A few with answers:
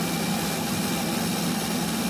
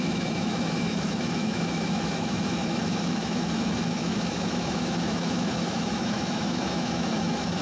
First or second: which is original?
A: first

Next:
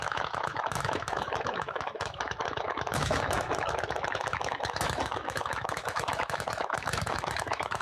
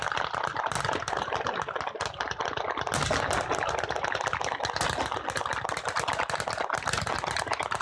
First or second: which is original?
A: second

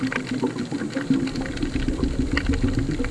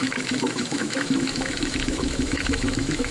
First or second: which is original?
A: first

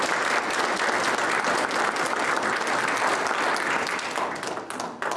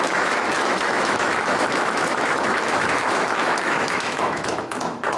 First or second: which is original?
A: first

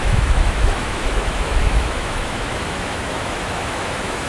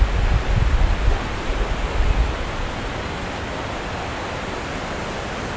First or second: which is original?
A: second